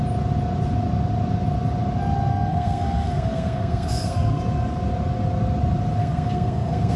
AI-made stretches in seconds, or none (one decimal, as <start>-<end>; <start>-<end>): 2.3-4.4; 6.0-7.0